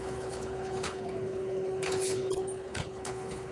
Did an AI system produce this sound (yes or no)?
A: yes